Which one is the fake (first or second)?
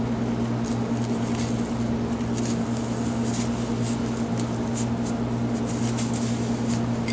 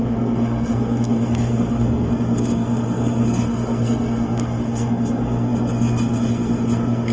second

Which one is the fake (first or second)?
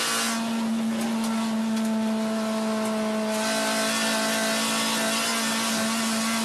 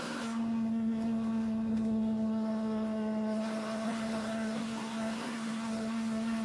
second